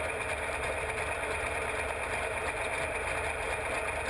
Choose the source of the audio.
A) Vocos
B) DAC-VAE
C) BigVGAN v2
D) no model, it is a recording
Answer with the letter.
D